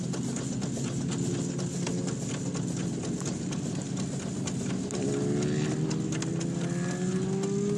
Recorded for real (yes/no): yes